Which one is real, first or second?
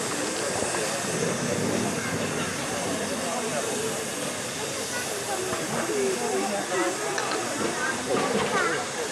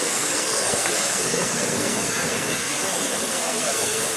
first